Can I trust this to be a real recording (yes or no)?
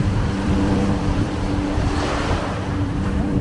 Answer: no